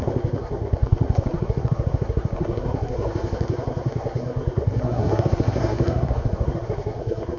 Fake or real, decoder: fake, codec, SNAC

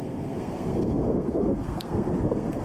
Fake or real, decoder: fake, codec, SNAC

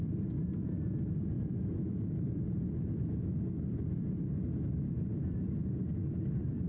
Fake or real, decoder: real